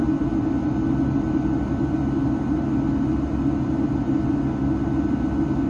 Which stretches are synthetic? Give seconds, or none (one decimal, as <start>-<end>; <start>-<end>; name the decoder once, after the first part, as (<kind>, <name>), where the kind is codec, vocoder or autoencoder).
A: none